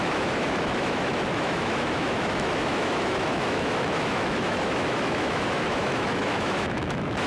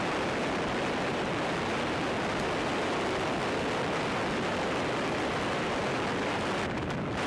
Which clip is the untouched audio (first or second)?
second